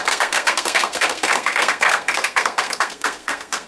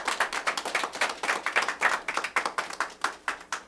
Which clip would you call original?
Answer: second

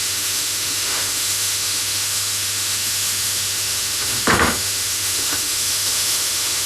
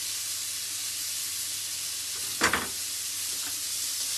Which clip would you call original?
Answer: second